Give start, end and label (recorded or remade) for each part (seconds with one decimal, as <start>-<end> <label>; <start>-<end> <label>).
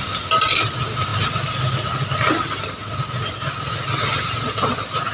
0.0-5.1 recorded